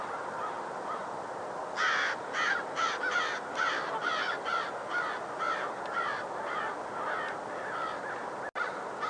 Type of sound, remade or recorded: recorded